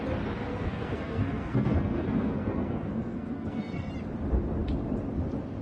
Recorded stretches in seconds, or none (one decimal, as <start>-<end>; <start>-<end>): 0.0-0.5; 3.9-5.6